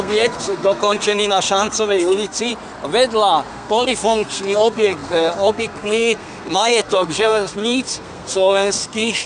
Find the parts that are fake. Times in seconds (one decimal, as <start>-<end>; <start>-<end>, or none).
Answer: 0.0-2.5; 3.5-9.3